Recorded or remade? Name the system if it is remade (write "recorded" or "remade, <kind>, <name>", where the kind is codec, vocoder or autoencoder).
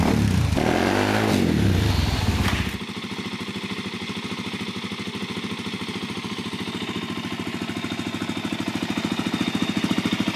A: recorded